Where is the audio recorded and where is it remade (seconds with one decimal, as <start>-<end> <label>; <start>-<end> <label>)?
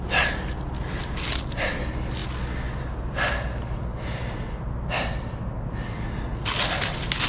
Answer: 0.0-7.3 recorded